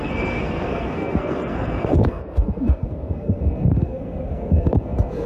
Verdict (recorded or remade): remade